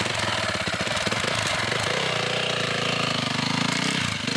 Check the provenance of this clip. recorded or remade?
recorded